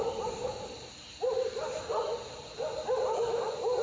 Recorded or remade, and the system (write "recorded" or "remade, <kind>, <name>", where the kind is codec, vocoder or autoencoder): recorded